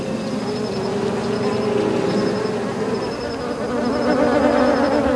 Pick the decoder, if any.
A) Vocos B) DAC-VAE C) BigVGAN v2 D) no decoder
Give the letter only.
D